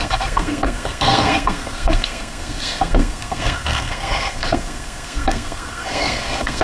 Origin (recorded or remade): remade